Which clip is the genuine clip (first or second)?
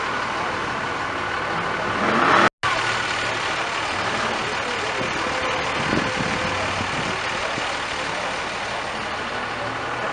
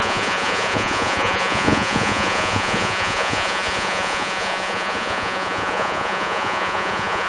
first